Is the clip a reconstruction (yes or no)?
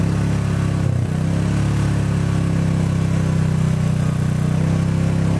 no